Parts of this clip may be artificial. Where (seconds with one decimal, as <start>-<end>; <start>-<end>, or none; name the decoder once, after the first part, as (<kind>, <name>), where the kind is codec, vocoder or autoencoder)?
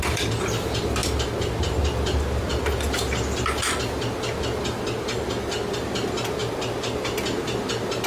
none